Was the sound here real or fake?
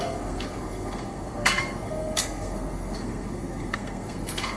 fake